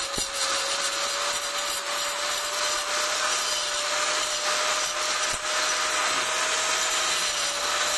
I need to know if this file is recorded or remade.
recorded